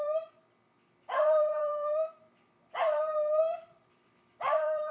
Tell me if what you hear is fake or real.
fake